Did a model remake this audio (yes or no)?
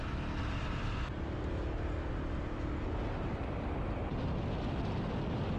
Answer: no